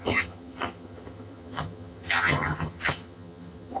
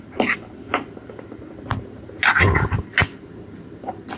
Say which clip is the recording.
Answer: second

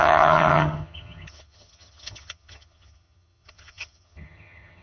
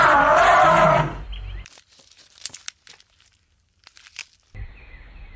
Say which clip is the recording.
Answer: second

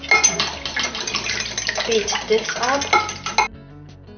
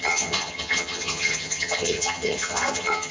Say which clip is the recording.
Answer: first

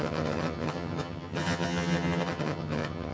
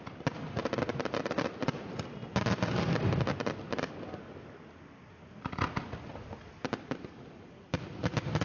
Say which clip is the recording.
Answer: second